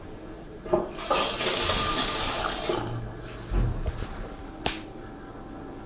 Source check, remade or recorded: recorded